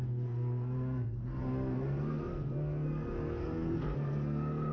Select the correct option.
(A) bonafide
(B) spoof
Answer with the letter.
B